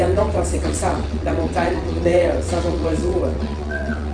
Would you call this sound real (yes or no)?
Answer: no